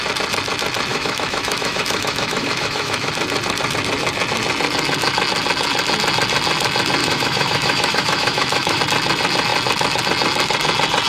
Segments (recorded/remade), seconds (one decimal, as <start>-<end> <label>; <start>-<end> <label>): 0.0-0.9 recorded; 0.9-3.1 remade; 3.1-7.0 recorded; 7.0-8.8 remade; 8.8-11.1 recorded